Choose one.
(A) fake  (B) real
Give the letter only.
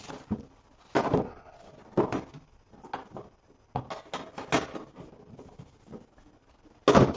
B